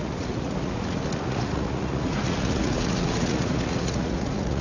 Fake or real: fake